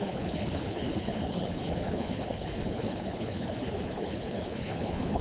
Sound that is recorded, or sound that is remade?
remade